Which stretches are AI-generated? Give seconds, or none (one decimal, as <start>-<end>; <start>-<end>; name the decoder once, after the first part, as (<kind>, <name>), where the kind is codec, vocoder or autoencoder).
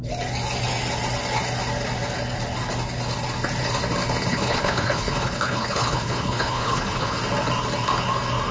4.3-7.2 (codec, HILCodec)